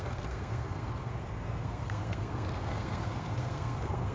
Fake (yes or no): yes